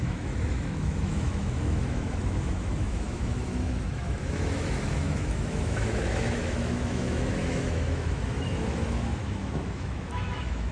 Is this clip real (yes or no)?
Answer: no